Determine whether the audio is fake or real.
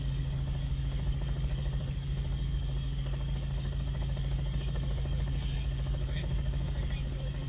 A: fake